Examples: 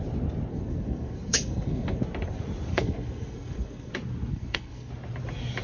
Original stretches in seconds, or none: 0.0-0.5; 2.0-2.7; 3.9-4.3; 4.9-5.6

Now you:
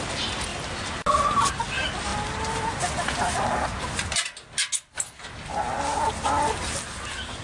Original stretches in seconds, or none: 0.0-7.4